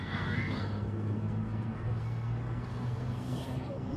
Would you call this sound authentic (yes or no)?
no